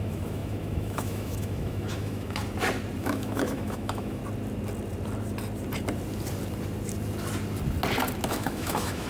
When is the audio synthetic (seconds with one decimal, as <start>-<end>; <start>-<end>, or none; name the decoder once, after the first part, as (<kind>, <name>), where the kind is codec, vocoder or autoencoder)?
0.0-2.4 (autoencoder, DAC-VAE); 3.0-4.2; 8.3-9.1